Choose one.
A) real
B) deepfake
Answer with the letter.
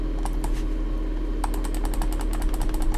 A